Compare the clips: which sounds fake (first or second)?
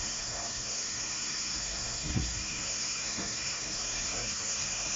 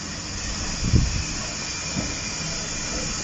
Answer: first